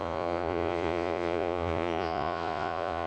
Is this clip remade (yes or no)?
yes